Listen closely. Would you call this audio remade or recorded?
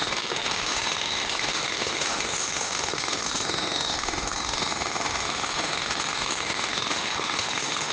remade